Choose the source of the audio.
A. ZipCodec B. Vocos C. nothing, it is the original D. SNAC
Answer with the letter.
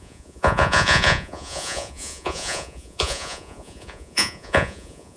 B